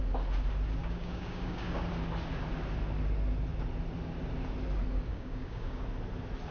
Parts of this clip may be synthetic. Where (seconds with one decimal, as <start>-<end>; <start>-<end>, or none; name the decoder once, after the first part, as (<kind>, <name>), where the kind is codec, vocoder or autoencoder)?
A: 0.8-1.9 (codec, DAC); 5.1-5.8